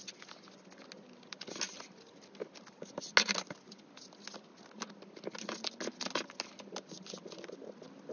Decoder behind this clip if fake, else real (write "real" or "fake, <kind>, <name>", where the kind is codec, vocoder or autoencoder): real